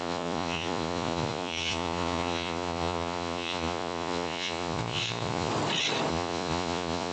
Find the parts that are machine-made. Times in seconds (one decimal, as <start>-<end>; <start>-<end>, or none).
0.0-5.5; 6.1-7.1